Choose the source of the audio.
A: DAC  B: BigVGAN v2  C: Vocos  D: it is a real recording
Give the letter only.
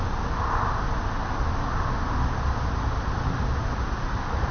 D